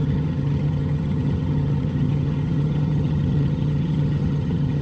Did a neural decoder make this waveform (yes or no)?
yes